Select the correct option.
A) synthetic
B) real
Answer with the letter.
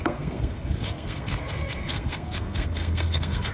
A